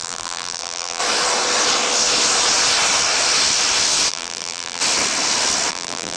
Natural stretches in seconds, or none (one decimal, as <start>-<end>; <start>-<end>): 1.0-4.1; 4.8-5.7